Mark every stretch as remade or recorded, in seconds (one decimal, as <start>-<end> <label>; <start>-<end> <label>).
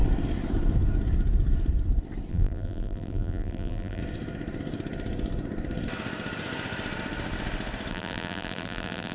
0.0-2.3 recorded; 2.3-4.0 remade; 4.0-7.9 recorded; 7.9-9.1 remade